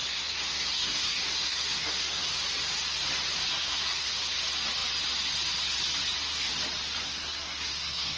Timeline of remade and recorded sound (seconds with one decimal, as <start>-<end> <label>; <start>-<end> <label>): 0.0-2.3 remade; 2.3-3.5 recorded; 3.5-4.1 remade; 4.1-7.0 recorded; 7.0-8.2 remade